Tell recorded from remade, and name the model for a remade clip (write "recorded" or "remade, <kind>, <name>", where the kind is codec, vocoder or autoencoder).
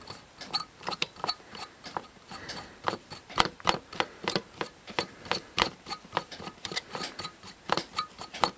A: remade, vocoder, BigVGAN v2